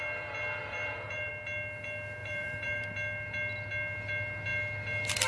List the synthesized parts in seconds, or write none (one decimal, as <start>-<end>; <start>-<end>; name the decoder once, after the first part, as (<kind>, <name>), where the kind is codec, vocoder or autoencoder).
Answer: 0.6-1.3 (vocoder, BigVGAN v2); 2.2-2.9